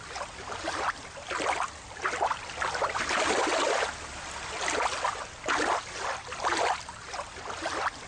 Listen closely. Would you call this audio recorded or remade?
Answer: recorded